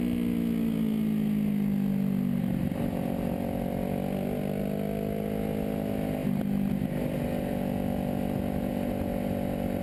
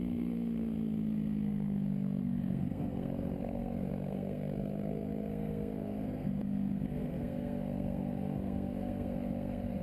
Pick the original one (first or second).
first